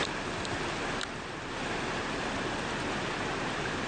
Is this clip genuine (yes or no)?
yes